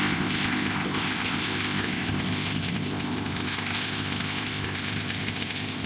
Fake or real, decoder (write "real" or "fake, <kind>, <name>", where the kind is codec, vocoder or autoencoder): fake, codec, ZipCodec